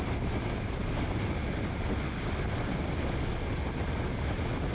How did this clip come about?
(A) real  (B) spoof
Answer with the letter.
A